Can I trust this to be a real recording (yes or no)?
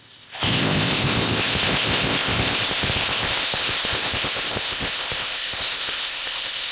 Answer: no